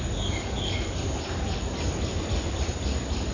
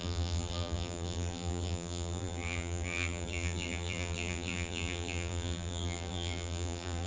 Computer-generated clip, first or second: second